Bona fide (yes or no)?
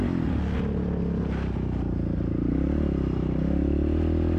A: yes